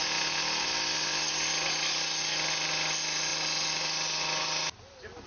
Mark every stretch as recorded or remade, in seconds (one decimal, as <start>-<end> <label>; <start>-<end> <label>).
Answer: 0.0-5.3 recorded